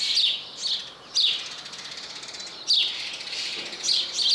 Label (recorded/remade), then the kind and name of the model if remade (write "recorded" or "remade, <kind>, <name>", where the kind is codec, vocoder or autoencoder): recorded